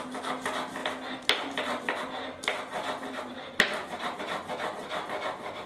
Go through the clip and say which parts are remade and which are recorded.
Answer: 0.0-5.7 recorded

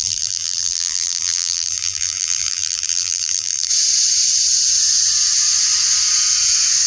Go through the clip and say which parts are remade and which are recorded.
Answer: 0.0-3.7 remade; 3.7-6.9 recorded

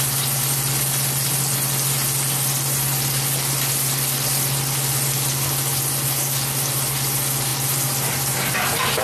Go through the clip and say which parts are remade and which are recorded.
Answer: 0.0-9.0 remade

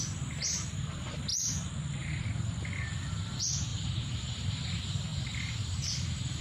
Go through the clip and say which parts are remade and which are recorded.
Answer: 0.0-3.7 recorded; 3.7-4.5 remade; 4.5-5.1 recorded; 5.1-6.4 remade